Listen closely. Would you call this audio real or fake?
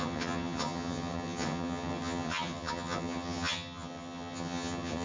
fake